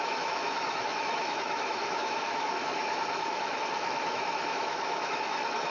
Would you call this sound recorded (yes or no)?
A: no